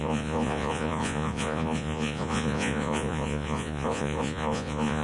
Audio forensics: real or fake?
fake